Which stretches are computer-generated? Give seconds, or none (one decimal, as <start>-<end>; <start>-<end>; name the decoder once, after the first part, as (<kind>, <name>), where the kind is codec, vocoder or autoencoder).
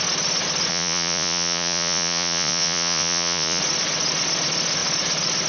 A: 0.7-3.6 (vocoder, Vocos)